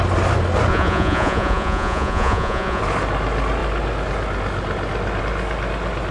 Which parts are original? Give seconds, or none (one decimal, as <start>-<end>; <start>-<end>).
0.0-0.7; 2.8-6.1